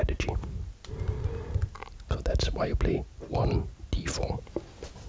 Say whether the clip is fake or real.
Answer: real